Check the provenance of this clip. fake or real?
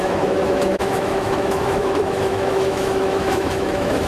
fake